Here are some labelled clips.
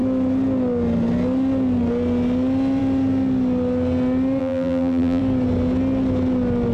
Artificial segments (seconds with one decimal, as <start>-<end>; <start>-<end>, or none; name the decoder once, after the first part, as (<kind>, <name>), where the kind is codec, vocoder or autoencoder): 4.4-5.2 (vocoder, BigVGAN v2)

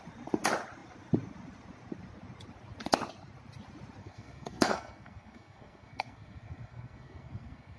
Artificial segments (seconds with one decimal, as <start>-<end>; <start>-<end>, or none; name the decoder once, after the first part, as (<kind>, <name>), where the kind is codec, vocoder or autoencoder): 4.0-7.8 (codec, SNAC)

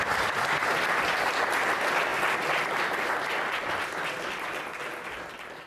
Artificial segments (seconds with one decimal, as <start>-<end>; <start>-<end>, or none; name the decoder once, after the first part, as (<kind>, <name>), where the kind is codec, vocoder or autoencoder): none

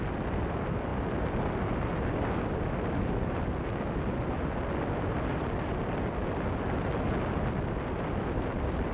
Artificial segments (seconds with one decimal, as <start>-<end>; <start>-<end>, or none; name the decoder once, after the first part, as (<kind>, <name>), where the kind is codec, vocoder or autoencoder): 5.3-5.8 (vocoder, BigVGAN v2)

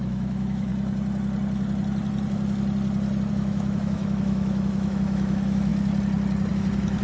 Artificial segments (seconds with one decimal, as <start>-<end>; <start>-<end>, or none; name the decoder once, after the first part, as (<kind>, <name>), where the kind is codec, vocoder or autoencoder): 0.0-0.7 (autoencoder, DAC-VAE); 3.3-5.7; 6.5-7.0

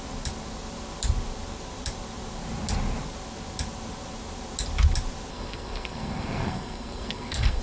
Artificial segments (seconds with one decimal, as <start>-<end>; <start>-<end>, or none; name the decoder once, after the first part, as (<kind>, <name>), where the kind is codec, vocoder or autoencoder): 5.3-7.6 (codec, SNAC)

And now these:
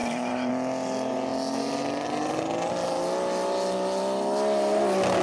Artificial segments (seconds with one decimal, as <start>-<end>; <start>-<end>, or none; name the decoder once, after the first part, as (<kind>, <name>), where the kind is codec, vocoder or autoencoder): 0.0-0.5 (vocoder, BigVGAN v2)

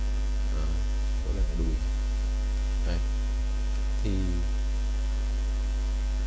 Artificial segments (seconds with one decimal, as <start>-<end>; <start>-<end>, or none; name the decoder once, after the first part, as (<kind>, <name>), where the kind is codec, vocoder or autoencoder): 1.2-1.8 (vocoder, Vocos)